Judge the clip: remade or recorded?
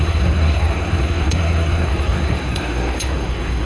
remade